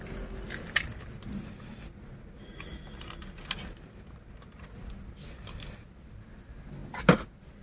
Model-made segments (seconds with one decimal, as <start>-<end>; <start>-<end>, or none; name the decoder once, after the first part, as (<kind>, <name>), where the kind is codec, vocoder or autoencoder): none